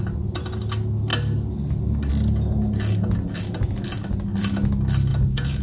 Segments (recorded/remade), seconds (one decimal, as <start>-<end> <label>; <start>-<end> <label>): 0.0-5.1 recorded; 5.1-5.6 remade